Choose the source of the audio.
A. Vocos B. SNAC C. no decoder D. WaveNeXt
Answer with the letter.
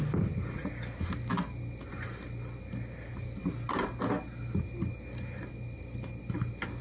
C